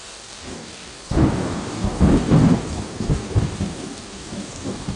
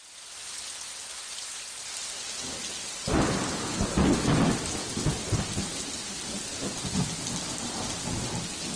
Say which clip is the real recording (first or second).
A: second